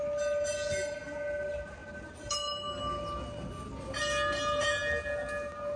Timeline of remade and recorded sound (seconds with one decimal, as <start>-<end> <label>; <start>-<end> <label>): 0.0-5.8 recorded